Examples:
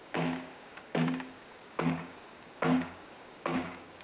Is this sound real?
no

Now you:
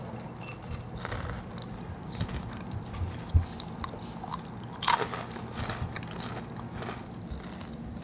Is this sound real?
yes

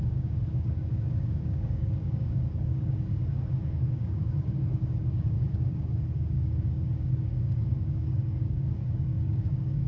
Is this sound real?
no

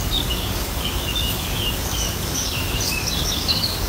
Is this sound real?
no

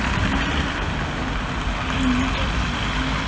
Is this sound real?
yes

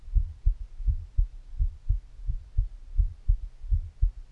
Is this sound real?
yes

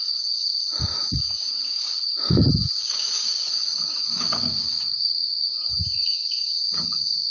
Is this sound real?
no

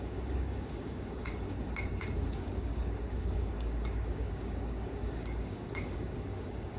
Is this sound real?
no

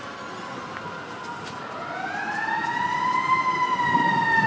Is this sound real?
yes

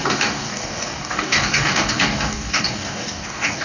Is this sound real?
no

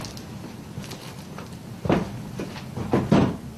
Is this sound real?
yes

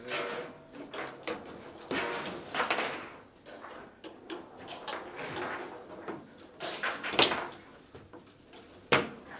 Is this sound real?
yes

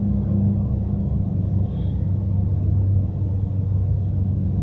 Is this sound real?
no